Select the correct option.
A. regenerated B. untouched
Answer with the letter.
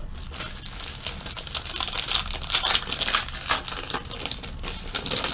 B